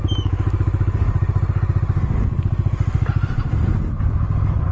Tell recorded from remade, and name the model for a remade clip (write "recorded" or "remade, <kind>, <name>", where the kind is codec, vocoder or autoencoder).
recorded